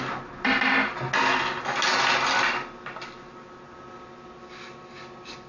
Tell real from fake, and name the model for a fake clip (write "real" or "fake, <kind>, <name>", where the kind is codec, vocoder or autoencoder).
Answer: real